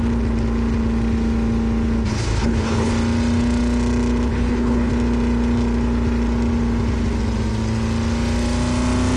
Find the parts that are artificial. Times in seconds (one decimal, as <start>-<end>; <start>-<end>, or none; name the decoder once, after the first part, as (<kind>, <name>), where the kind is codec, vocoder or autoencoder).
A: 2.1-2.9 (codec, HILCodec); 4.3-4.9